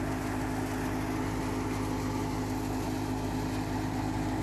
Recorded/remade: recorded